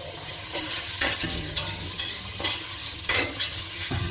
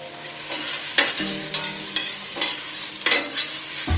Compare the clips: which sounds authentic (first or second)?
second